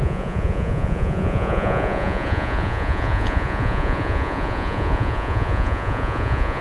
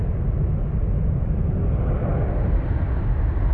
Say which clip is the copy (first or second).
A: first